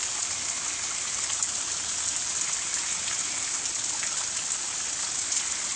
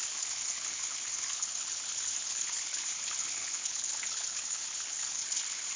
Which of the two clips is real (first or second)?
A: first